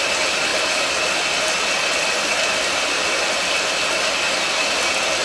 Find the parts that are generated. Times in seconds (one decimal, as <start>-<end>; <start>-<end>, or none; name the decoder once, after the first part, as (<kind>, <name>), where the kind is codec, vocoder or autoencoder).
none